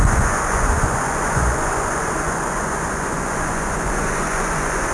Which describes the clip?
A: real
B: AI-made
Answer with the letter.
B